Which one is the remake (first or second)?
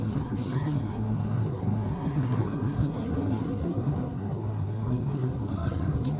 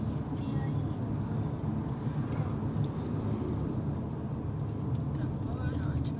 first